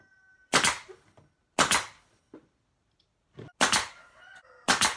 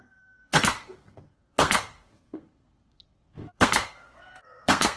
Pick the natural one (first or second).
first